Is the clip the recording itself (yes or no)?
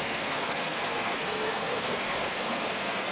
no